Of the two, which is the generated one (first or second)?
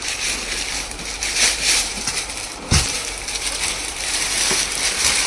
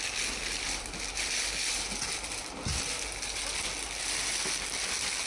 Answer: first